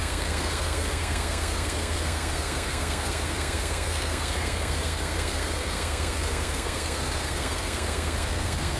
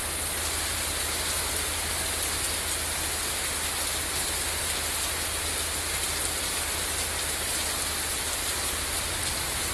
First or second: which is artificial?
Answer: first